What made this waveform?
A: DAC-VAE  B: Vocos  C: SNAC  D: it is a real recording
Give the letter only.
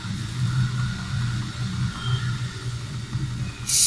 B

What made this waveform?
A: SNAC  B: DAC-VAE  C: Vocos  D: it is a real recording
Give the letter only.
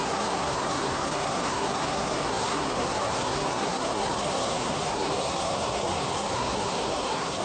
A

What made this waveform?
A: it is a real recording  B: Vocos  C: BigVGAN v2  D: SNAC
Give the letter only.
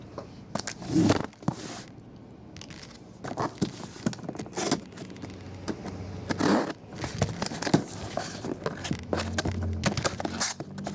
A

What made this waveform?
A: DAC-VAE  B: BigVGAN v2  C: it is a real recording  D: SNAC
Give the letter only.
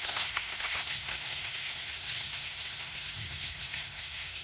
D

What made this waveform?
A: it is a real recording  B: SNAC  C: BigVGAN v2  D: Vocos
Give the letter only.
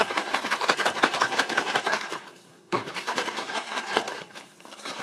B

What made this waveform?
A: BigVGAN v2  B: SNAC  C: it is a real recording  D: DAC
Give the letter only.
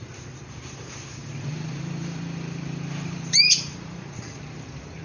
A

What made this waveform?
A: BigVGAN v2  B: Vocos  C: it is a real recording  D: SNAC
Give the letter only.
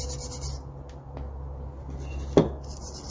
C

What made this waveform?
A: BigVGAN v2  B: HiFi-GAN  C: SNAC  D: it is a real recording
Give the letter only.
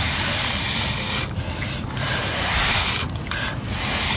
D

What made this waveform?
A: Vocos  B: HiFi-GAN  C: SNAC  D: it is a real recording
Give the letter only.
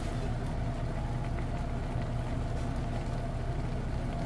D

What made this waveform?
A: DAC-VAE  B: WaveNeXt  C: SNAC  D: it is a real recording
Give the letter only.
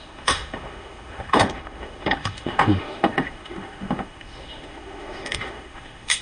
A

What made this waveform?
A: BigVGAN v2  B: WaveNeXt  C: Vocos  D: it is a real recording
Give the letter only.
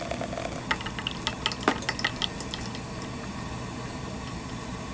D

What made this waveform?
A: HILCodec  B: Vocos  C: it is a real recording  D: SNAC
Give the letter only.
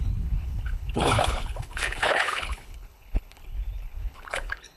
A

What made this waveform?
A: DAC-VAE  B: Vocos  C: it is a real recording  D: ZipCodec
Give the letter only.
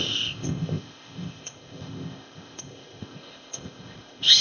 D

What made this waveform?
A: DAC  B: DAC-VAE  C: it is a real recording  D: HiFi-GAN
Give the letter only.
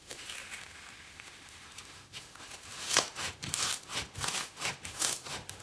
B